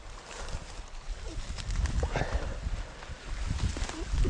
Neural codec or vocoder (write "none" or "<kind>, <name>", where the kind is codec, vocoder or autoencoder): none